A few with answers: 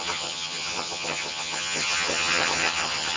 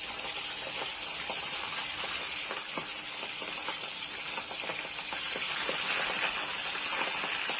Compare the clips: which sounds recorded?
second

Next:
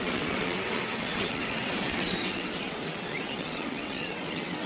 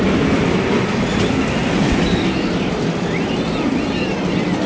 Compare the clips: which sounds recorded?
second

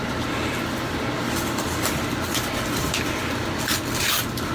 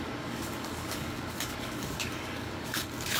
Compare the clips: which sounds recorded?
first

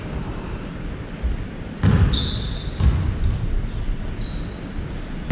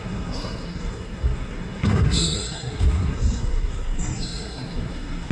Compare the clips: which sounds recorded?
first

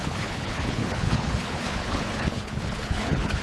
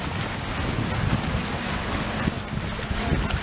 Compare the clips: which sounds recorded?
second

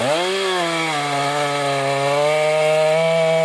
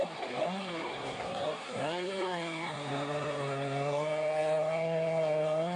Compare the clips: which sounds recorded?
first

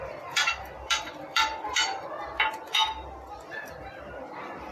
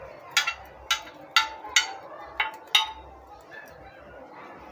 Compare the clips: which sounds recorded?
second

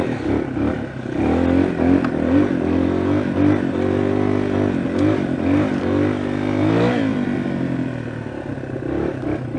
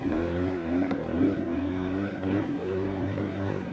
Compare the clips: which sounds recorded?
first